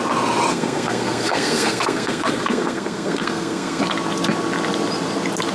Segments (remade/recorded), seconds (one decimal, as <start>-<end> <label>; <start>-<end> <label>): 0.0-0.5 recorded; 0.5-3.8 remade; 3.8-5.5 recorded